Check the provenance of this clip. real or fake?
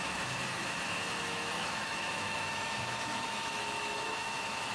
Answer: fake